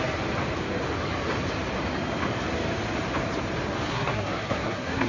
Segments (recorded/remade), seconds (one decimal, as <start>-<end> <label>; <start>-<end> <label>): 0.0-3.9 recorded; 3.9-5.1 remade